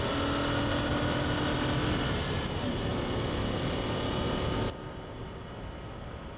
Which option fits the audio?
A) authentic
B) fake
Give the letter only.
A